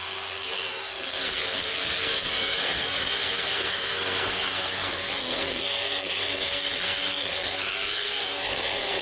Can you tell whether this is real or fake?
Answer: fake